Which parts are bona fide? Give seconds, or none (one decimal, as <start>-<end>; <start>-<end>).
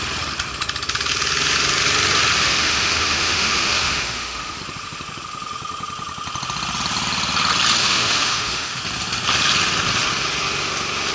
0.0-2.5; 4.6-7.8; 8.8-11.1